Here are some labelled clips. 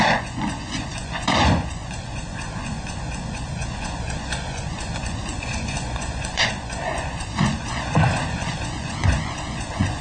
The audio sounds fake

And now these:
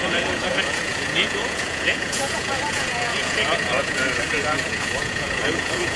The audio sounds fake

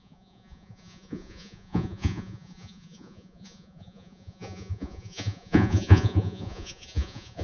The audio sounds fake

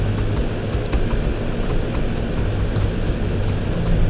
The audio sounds real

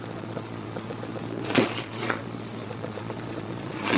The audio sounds fake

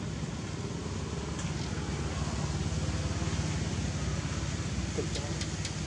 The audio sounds real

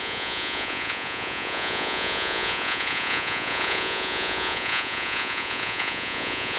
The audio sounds fake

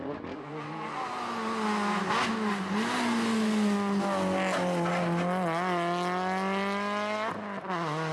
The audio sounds real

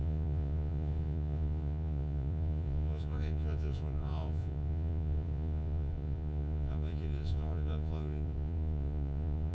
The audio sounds fake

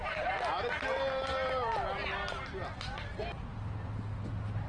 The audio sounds real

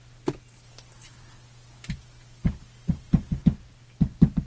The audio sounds real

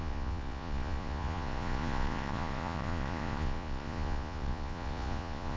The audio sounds fake